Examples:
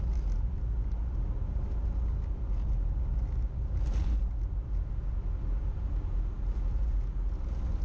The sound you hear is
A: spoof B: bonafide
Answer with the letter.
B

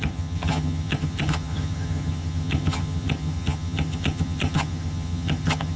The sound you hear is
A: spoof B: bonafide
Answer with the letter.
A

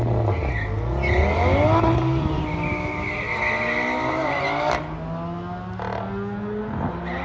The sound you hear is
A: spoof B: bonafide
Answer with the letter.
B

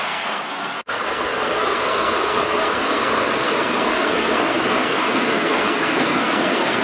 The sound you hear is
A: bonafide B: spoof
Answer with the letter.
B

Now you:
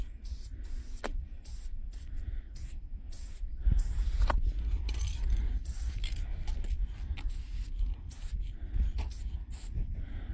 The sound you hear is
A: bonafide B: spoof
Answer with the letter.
A